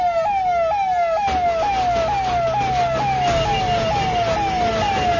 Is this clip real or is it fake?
real